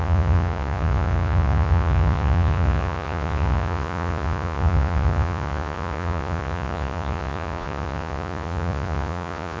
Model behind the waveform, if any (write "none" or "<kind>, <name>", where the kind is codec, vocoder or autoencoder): vocoder, Vocos